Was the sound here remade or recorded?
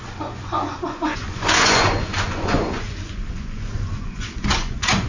remade